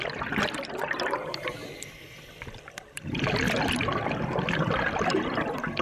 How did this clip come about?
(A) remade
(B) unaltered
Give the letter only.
A